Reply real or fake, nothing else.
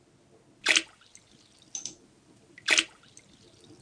real